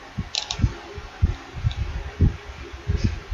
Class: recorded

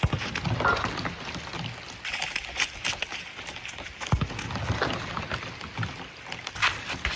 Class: recorded